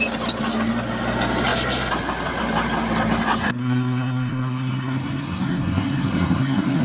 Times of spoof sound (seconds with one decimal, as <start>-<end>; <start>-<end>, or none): 3.4-6.8